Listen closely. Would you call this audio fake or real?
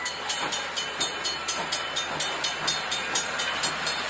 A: real